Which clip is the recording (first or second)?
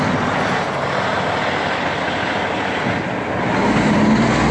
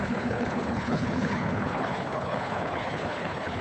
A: first